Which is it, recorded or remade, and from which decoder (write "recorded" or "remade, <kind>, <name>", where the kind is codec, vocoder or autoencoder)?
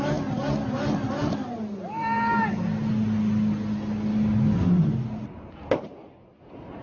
recorded